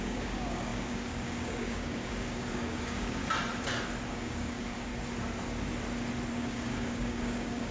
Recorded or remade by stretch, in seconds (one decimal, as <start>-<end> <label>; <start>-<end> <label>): 0.0-3.2 remade; 3.2-4.1 recorded; 4.1-4.9 remade; 4.9-6.3 recorded; 6.3-7.7 remade